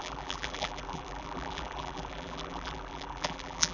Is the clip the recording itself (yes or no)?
no